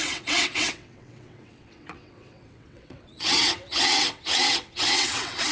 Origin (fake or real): fake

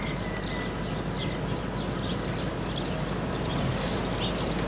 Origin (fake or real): real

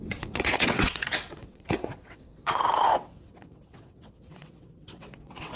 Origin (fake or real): fake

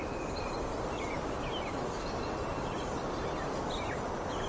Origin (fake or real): real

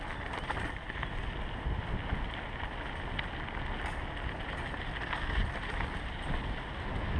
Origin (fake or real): real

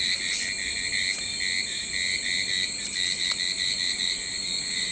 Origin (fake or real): real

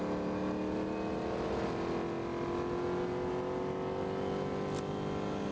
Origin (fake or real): real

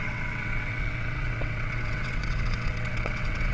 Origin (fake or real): fake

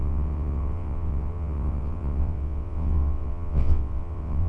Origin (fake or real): fake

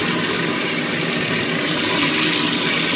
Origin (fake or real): real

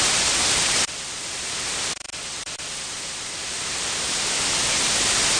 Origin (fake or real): real